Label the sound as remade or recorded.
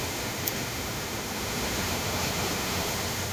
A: remade